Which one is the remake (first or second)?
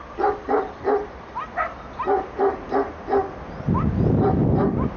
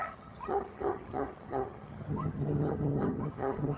second